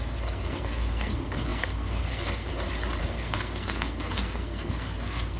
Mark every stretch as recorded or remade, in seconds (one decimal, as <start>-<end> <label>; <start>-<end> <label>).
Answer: 0.0-2.5 remade; 2.5-3.0 recorded; 3.0-5.4 remade